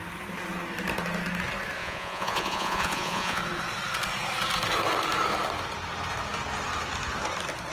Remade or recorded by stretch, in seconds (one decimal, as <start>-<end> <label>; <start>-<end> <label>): 0.0-1.8 recorded; 1.8-3.4 remade; 3.4-7.7 recorded